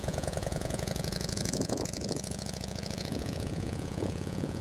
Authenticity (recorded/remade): remade